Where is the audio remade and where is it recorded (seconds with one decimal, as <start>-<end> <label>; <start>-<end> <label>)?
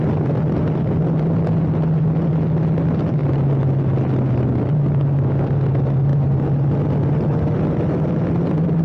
0.0-8.8 recorded